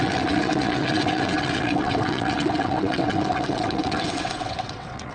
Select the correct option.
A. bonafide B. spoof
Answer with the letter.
B